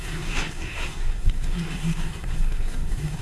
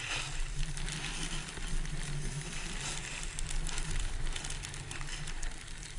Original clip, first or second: second